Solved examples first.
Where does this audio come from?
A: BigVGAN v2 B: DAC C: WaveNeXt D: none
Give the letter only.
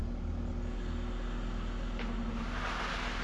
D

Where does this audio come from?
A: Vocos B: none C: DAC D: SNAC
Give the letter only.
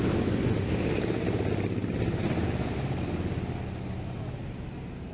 B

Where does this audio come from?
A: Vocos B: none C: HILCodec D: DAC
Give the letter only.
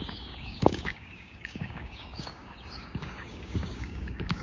D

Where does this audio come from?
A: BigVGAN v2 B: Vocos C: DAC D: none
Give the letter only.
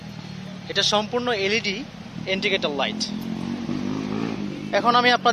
D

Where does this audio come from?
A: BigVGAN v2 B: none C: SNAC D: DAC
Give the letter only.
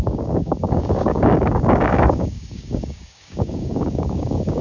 D